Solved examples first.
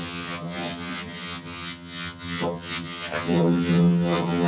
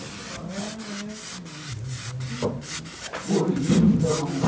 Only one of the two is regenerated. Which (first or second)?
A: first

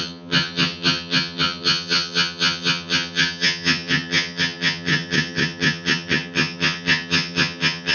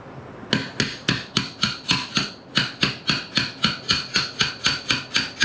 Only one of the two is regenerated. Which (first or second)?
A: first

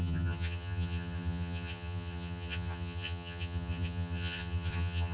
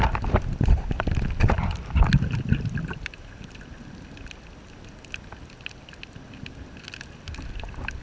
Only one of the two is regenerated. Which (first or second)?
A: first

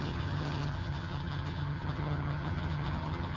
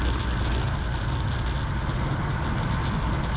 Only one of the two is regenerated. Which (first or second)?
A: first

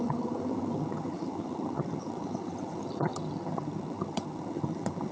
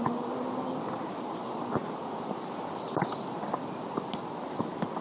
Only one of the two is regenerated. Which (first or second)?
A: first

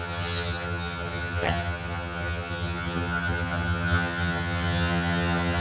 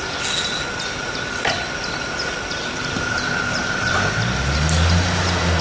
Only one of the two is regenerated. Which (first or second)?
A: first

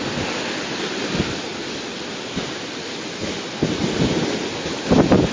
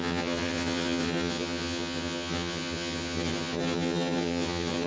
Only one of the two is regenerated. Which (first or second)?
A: second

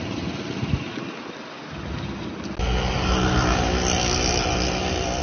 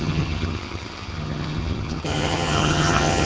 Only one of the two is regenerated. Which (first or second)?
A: second